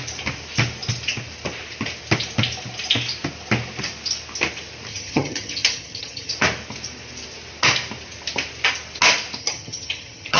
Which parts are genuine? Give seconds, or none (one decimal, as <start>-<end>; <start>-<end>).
0.0-4.9; 6.3-9.4